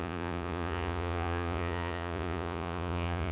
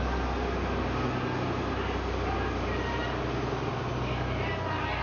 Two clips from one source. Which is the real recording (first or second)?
second